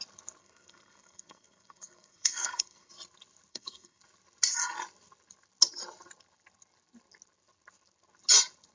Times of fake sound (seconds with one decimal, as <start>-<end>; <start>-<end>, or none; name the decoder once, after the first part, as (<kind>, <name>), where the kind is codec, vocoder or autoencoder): 0.4-2.9 (codec, SNAC); 3.5-4.0